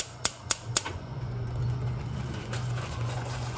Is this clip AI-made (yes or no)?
yes